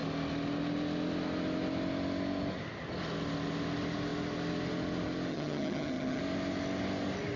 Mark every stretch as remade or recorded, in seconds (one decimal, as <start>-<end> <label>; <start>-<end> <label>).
0.0-5.3 recorded; 5.3-6.2 remade; 6.2-7.4 recorded